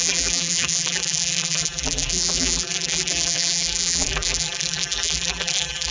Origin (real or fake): fake